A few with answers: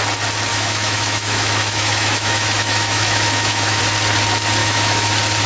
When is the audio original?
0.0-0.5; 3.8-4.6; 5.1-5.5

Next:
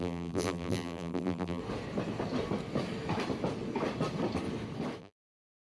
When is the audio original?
1.6-5.0

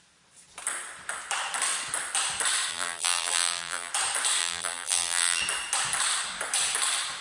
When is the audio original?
0.0-2.7; 3.9-4.4; 5.4-7.2

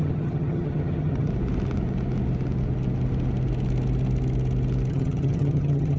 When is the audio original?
1.3-4.9

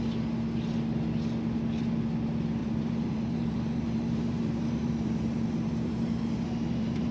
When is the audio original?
0.0-2.6